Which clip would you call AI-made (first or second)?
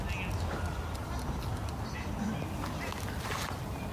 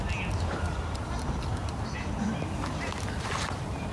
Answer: second